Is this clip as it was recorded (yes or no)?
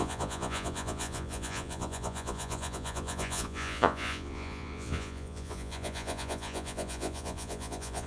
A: no